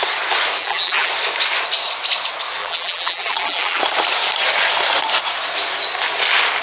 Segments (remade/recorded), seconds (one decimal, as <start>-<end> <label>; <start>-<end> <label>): 0.0-0.6 recorded; 0.6-1.1 remade; 1.1-2.6 recorded; 2.6-3.8 remade; 3.8-6.6 recorded